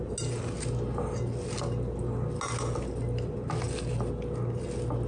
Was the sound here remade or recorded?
recorded